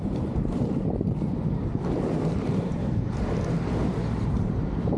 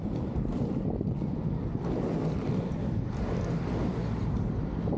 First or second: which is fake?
first